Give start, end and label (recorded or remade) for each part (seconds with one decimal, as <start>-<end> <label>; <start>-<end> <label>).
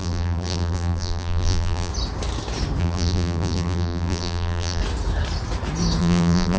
0.0-1.9 remade; 1.9-2.8 recorded; 2.8-4.8 remade; 4.8-6.0 recorded; 6.0-6.6 remade